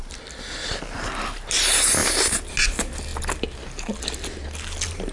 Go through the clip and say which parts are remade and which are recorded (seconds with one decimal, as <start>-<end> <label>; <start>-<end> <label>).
0.0-5.1 recorded